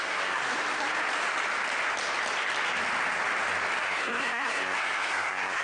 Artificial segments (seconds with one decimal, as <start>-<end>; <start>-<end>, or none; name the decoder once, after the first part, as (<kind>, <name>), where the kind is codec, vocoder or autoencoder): 0.0-0.4 (codec, SNAC); 3.8-5.6